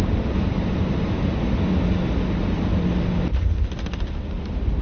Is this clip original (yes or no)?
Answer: yes